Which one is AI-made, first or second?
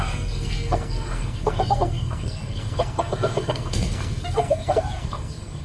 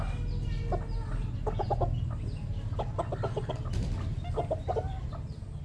first